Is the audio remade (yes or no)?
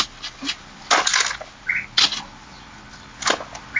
no